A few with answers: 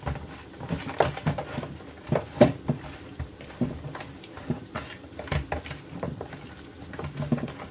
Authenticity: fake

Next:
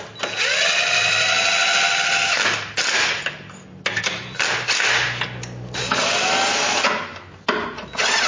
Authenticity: real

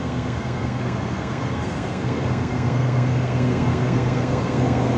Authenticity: fake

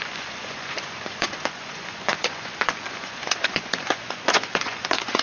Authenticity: fake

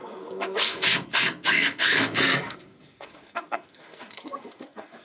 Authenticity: fake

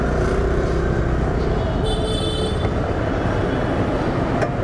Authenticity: real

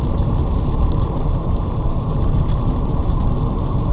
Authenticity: fake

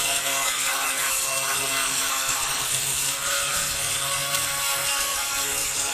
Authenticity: fake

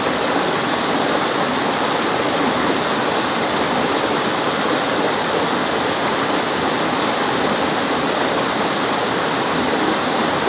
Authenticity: real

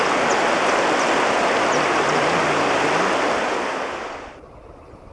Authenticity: real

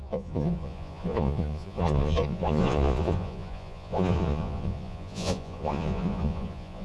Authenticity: fake